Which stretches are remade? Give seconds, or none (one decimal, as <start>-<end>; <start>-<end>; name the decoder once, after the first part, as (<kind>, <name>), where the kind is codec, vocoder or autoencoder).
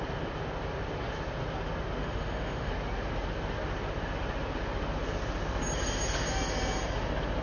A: 2.0-2.7 (autoencoder, DAC-VAE)